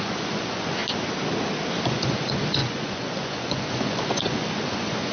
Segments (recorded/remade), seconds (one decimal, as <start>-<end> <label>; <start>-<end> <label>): 0.0-0.8 remade; 0.8-1.9 recorded; 1.9-5.1 remade